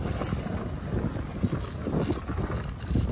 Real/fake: real